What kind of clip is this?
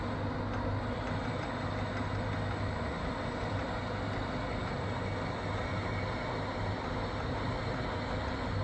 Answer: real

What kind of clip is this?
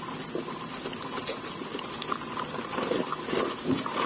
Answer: real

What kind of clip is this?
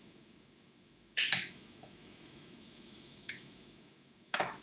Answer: fake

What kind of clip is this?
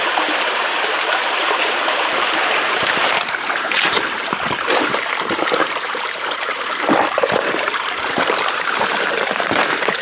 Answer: fake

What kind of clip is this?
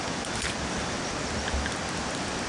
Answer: real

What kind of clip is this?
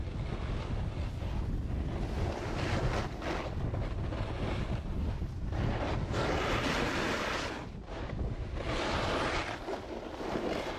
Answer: real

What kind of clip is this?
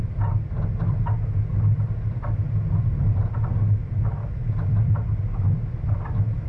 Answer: real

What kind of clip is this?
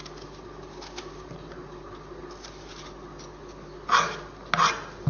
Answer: real